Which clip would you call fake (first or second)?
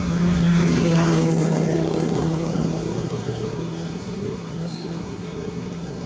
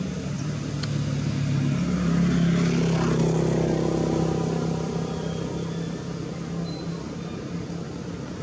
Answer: first